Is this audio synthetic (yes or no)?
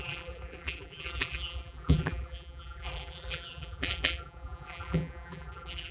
yes